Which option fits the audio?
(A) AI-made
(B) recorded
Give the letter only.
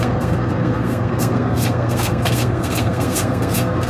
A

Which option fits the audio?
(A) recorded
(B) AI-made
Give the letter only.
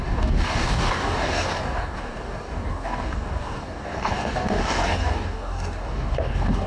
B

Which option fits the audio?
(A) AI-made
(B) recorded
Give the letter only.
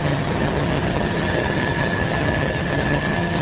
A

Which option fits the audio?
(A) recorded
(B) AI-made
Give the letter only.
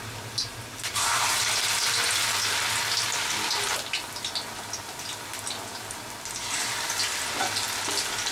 A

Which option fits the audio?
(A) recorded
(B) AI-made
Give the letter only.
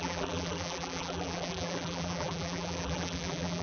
B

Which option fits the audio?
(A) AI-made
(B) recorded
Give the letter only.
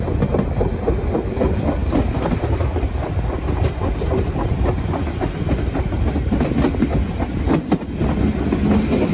B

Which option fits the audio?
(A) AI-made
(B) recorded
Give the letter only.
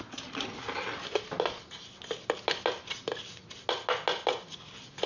B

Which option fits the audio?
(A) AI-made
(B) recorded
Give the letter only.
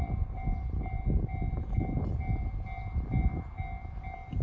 B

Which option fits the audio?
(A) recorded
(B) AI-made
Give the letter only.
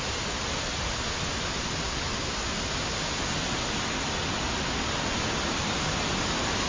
A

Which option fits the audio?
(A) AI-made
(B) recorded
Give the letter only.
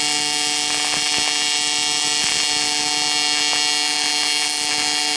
B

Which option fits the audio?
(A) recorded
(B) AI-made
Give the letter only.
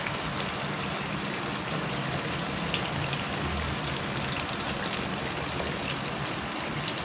A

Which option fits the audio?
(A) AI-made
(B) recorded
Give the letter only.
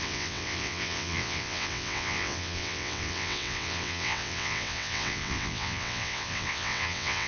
A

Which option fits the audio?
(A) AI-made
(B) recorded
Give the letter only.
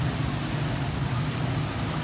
B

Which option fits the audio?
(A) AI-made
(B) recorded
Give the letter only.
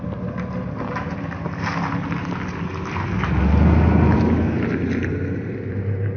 B